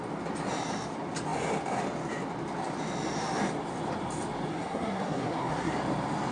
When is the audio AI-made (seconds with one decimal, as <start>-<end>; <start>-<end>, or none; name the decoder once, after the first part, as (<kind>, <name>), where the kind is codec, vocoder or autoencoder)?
4.5-5.7 (codec, SNAC)